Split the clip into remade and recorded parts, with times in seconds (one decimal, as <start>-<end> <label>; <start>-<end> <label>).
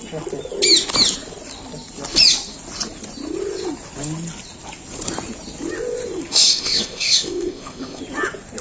0.0-6.3 recorded; 6.3-8.0 remade; 8.0-8.6 recorded